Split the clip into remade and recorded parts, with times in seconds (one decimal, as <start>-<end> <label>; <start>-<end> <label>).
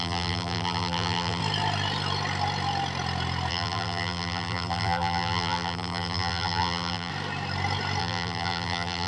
0.0-1.4 remade; 1.4-3.5 recorded; 3.5-7.1 remade; 7.1-8.0 recorded; 8.0-9.1 remade